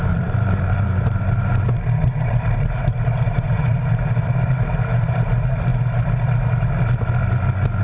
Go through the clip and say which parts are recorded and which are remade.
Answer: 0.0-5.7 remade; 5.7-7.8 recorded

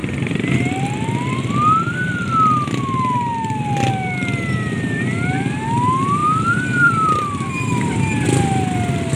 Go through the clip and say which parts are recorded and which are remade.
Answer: 0.0-6.2 recorded; 6.2-7.5 remade; 7.5-9.2 recorded

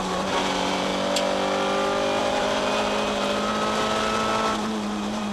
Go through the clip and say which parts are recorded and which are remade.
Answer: 0.0-0.9 remade; 0.9-2.2 recorded; 2.2-3.5 remade; 3.5-4.7 recorded; 4.7-5.3 remade

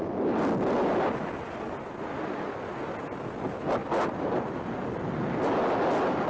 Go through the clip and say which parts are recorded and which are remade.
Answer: 0.0-3.8 recorded; 3.8-4.9 remade; 4.9-6.3 recorded

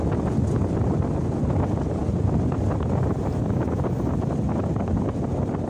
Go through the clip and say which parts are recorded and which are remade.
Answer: 0.0-5.7 recorded